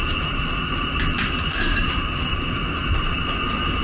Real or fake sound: fake